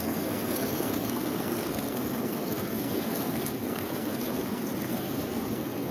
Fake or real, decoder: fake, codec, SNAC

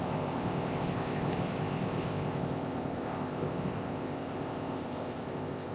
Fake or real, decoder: fake, codec, ZipCodec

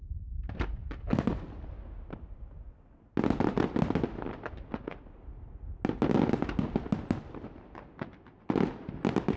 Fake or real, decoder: real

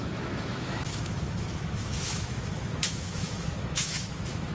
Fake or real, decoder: fake, autoencoder, DAC-VAE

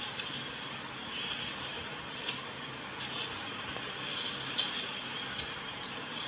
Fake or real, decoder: real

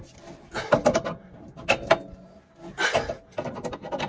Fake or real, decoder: real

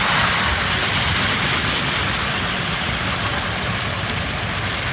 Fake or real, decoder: real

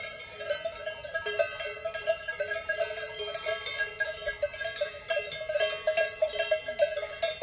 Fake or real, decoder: real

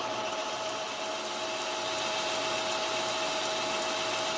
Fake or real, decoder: real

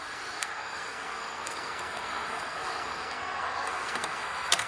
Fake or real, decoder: fake, codec, SNAC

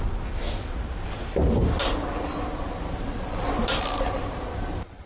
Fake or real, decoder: real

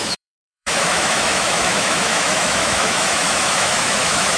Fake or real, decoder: fake, autoencoder, DAC-VAE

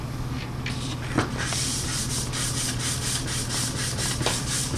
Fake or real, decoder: real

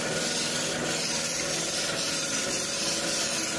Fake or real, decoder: real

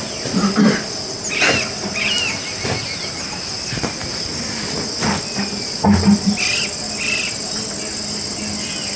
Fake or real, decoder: real